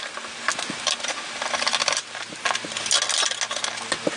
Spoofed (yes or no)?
no